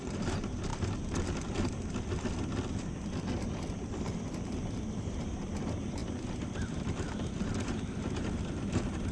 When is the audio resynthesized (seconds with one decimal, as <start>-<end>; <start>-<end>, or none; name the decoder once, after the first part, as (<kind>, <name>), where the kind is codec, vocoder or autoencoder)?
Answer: 0.0-0.7 (vocoder, BigVGAN v2); 4.9-9.1